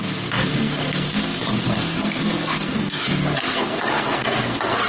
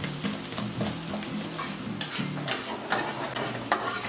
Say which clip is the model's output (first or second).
first